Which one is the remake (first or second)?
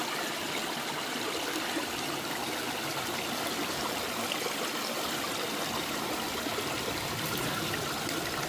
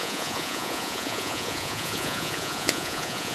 second